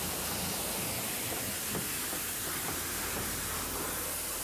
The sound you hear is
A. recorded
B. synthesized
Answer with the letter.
A